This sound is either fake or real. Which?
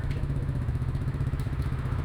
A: fake